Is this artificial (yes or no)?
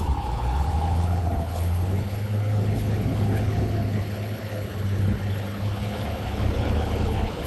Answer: yes